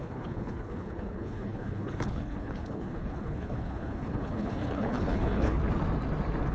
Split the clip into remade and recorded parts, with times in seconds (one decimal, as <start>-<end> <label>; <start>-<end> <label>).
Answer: 0.0-5.6 remade; 5.6-6.5 recorded